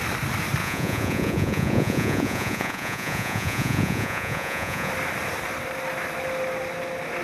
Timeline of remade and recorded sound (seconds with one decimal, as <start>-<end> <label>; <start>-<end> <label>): 0.0-0.6 recorded; 0.6-4.9 remade; 4.9-7.2 recorded